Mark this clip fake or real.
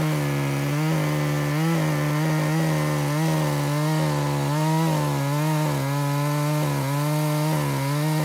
real